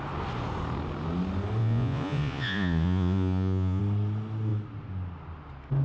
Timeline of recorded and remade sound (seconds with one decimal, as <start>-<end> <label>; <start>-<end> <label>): 0.0-1.6 recorded; 1.6-3.8 remade; 3.8-5.8 recorded